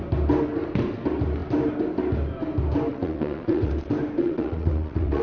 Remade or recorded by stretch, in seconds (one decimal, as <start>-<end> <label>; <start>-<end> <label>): 0.0-2.9 recorded; 2.9-3.7 remade; 3.7-4.2 recorded; 4.2-5.2 remade